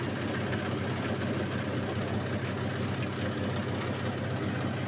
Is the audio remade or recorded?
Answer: recorded